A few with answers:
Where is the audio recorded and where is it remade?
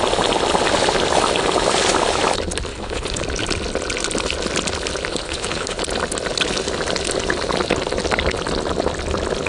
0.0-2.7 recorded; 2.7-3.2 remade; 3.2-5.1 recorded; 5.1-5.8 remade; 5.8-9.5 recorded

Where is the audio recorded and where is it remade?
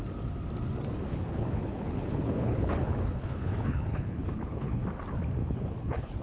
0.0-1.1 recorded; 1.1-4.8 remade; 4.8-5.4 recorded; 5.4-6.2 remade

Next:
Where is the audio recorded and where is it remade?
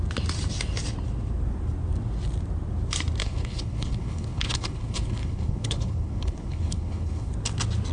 0.0-3.2 recorded; 3.2-7.3 remade; 7.3-7.9 recorded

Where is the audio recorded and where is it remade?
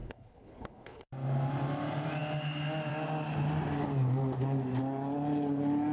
0.0-1.1 remade; 1.1-5.9 recorded